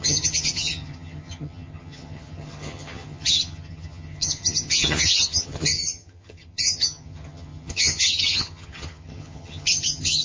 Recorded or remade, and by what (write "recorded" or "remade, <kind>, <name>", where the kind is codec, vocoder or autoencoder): remade, vocoder, HiFi-GAN